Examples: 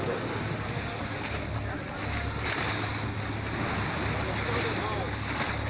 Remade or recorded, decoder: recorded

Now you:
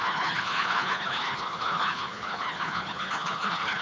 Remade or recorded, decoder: remade, codec, HILCodec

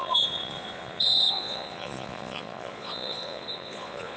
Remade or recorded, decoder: remade, vocoder, Vocos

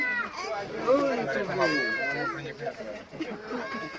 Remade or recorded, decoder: recorded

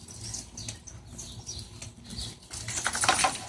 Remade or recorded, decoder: recorded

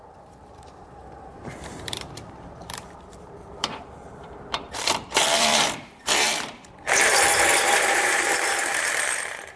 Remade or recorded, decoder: remade, vocoder, BigVGAN v2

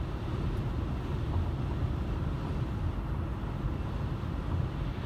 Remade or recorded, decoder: recorded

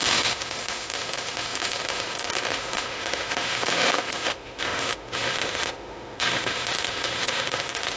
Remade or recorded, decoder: remade, autoencoder, DAC-VAE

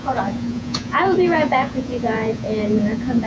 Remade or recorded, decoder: remade, vocoder, Vocos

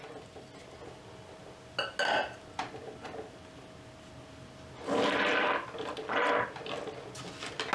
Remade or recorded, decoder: recorded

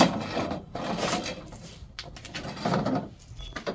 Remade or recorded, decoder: recorded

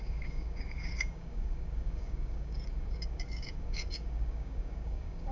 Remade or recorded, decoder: remade, codec, DAC